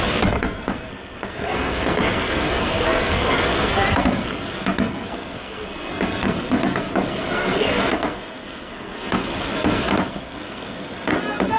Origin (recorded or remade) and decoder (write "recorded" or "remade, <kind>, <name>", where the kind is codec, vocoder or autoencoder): remade, codec, SNAC